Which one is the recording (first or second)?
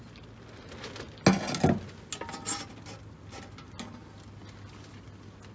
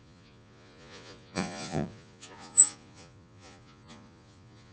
first